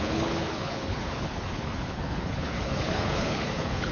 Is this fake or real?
fake